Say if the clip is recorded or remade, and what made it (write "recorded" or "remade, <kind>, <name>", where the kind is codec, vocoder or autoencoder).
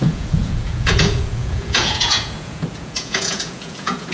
remade, vocoder, Vocos